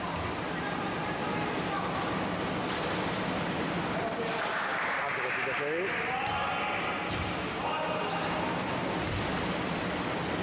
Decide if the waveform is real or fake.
real